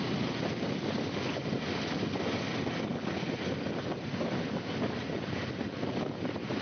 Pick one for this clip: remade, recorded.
recorded